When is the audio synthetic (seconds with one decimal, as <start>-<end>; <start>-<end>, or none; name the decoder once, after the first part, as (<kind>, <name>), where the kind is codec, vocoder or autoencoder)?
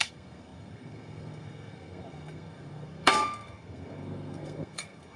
0.0-5.2 (codec, SNAC)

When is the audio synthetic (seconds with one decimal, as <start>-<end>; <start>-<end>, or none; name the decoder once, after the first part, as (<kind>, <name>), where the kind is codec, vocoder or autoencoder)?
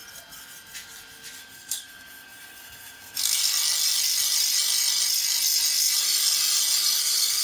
1.4-3.4 (codec, SNAC); 7.0-7.4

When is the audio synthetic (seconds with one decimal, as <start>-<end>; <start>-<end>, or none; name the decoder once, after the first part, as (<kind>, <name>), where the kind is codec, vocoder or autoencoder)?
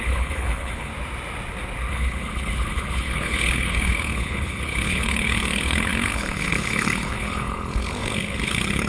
0.0-0.9 (codec, HILCodec); 1.9-8.9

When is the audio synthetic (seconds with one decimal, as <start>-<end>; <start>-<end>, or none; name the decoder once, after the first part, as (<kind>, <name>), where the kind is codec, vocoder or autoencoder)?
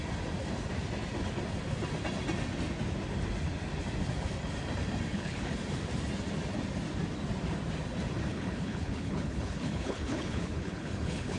5.1-5.6 (codec, HILCodec); 8.3-11.4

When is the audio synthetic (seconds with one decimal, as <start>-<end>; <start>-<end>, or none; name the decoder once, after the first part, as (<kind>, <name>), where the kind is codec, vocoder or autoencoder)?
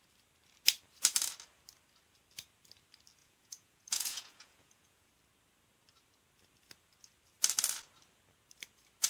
3.2-5.1 (vocoder, Vocos)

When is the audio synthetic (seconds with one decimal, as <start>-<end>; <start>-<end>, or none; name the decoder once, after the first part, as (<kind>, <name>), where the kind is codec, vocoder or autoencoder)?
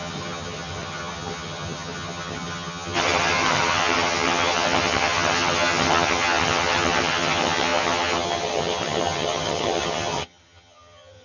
0.0-11.2 (vocoder, HiFi-GAN)